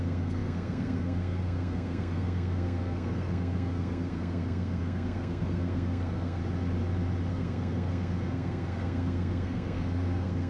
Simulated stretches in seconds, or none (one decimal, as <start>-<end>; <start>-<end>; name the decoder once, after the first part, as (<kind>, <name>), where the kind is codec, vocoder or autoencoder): 0.0-6.4 (codec, SNAC); 7.3-10.5